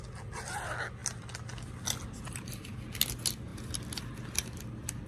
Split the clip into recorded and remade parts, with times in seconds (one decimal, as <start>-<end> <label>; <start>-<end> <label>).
0.0-5.1 recorded